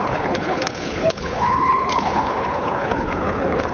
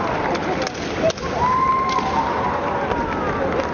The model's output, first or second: first